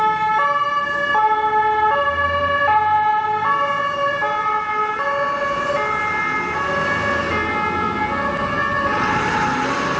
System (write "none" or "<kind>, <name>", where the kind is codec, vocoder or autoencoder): none